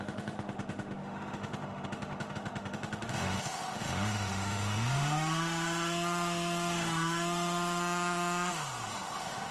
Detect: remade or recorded remade